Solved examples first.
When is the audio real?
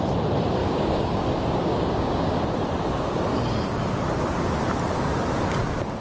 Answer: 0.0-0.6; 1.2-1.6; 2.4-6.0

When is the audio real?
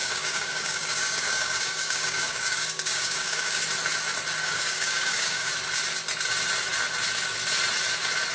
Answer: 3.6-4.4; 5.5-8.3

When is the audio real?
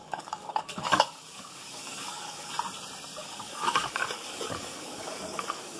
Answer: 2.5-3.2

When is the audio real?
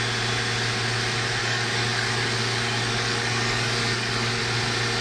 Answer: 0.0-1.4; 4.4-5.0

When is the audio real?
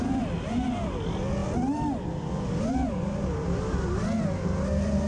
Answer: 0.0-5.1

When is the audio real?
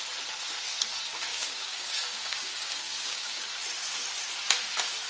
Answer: 0.0-1.3; 3.4-5.1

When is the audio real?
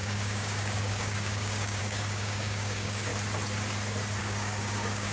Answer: 3.1-4.2